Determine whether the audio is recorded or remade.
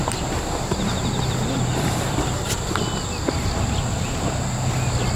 remade